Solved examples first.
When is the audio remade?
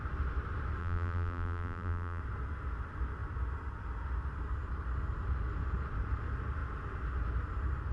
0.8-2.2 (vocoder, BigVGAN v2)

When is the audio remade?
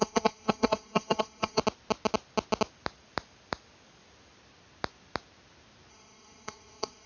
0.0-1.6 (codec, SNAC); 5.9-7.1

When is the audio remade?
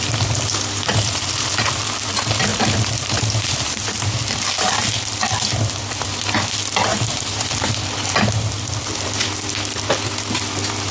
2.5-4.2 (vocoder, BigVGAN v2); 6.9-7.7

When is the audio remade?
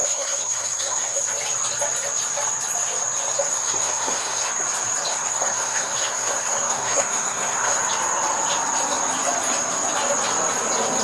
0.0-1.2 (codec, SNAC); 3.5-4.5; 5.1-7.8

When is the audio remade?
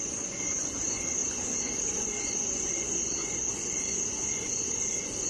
0.0-5.3 (vocoder, Vocos)